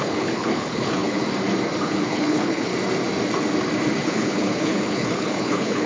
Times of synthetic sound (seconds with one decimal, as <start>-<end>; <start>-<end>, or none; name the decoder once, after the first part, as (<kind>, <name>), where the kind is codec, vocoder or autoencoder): 0.0-1.2 (codec, HILCodec); 1.8-2.7; 4.0-5.9